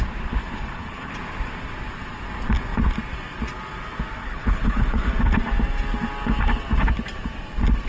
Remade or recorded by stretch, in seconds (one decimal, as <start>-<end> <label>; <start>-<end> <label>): 0.0-0.4 recorded; 0.4-1.1 remade; 1.1-4.2 recorded; 4.2-5.1 remade; 5.1-7.9 recorded